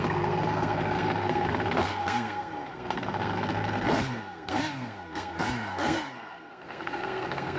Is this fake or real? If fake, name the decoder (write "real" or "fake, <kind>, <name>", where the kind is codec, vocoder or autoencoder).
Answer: fake, codec, SNAC